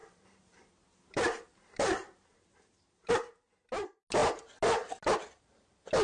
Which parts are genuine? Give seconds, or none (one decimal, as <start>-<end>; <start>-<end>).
3.1-6.0